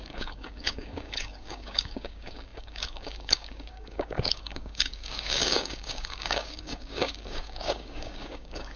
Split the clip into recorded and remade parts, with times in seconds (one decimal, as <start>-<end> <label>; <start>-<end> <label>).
0.0-8.8 remade